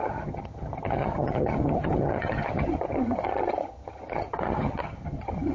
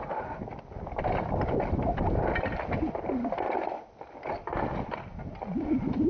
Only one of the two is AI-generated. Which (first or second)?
first